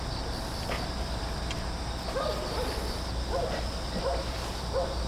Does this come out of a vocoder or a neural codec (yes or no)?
no